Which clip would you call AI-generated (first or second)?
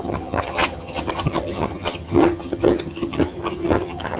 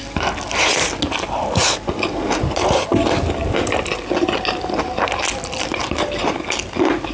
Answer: first